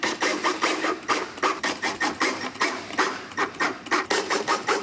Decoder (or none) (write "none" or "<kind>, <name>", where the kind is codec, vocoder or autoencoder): vocoder, BigVGAN v2